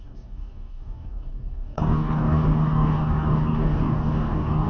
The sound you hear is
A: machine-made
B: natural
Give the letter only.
A